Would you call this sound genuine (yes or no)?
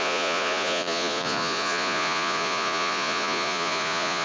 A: no